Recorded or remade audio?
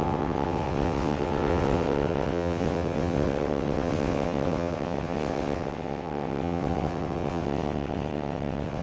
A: remade